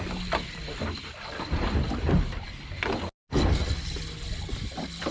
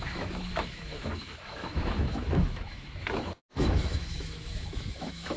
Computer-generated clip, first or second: second